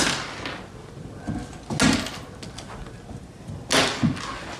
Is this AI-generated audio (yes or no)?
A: no